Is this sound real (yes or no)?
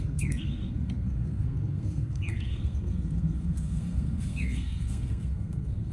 no